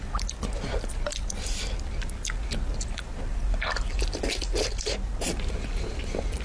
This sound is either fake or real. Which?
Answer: real